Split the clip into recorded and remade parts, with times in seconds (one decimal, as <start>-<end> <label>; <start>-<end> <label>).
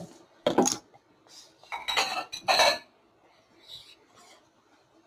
0.0-5.1 recorded